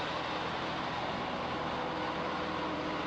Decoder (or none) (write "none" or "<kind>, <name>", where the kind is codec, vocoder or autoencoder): none